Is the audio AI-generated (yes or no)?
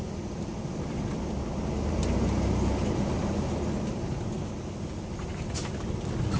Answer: no